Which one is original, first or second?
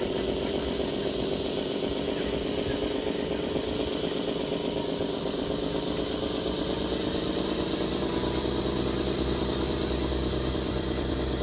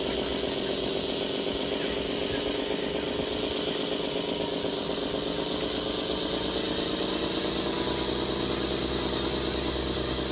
second